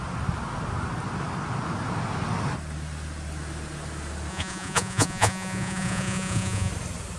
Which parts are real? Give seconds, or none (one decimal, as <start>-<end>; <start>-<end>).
0.0-4.3; 6.7-7.2